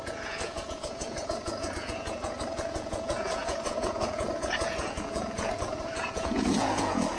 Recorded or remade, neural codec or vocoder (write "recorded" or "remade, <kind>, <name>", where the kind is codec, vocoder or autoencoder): remade, vocoder, Vocos